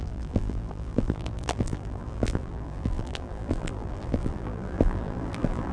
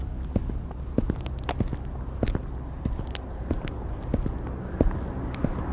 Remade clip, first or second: first